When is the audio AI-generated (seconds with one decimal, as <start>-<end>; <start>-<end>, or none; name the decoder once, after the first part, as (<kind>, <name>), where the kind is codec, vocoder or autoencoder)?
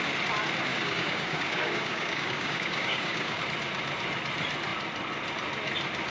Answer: 0.7-3.4 (codec, DAC)